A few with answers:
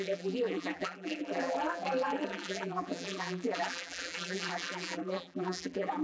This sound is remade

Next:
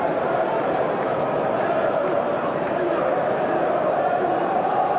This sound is remade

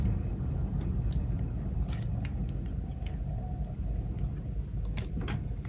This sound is recorded